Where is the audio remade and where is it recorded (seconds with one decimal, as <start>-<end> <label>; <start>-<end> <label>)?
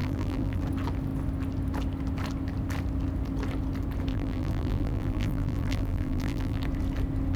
0.0-0.6 remade; 0.6-4.1 recorded; 4.1-6.6 remade; 6.6-7.4 recorded